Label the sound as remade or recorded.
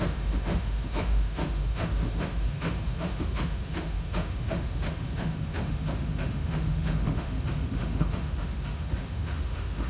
remade